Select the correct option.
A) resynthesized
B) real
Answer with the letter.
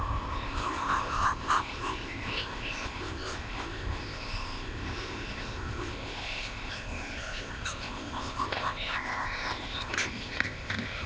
A